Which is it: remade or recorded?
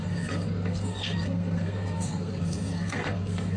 remade